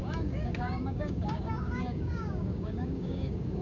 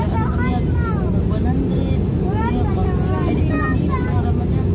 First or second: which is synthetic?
first